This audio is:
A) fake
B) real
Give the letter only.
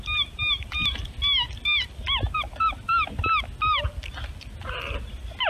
B